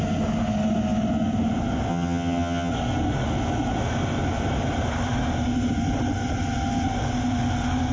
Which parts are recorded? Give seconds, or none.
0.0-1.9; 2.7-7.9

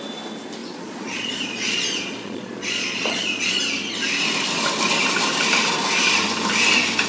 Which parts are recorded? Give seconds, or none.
0.0-0.6; 3.6-7.1

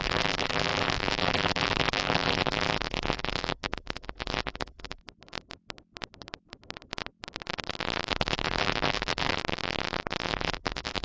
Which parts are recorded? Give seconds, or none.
5.0-8.1; 9.3-10.3

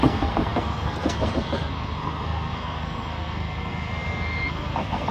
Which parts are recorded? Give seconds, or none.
none

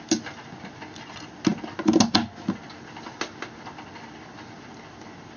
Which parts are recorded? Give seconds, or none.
0.0-5.4